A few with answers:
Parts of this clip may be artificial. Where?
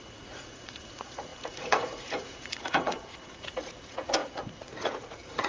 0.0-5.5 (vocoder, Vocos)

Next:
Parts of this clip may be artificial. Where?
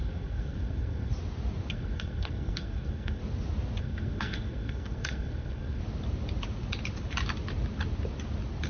0.0-1.1 (codec, SNAC); 1.7-3.2; 3.8-5.8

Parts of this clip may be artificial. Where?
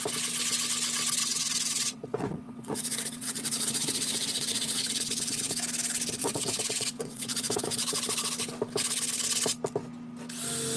1.2-5.5 (vocoder, WaveNeXt); 6.2-7.6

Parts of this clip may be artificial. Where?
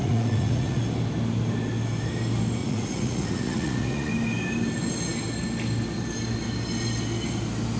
0.0-0.8 (vocoder, Vocos); 2.6-4.1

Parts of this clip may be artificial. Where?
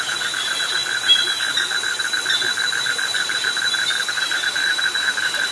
0.0-0.8 (vocoder, BigVGAN v2); 4.1-5.5